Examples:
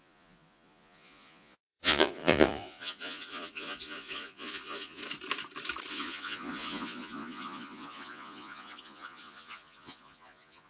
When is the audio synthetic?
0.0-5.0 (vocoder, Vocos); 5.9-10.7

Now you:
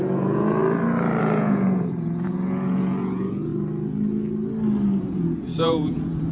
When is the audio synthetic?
0.0-0.6 (vocoder, Vocos); 1.2-3.5; 5.0-6.3